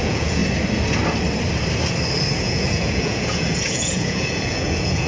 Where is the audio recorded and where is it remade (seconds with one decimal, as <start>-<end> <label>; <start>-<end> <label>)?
0.0-0.4 remade; 0.4-2.4 recorded; 2.4-5.1 remade